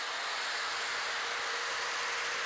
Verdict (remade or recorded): recorded